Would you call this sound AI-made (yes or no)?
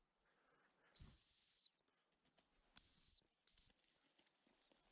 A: no